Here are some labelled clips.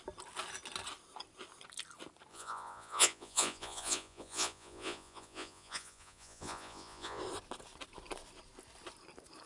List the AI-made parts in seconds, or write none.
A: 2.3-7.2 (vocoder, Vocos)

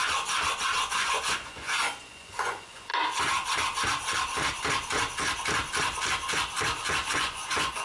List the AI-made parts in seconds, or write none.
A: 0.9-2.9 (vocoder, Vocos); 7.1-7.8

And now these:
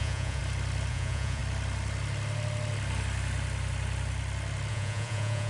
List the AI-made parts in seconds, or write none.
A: 0.0-0.4 (vocoder, Vocos); 0.9-1.4; 4.7-5.5

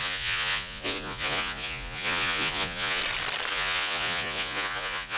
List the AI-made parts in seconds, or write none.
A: 0.0-3.0 (vocoder, Vocos); 3.5-5.2

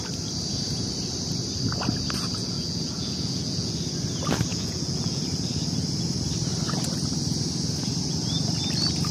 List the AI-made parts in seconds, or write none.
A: 2.4-3.7 (vocoder, Vocos); 4.5-5.2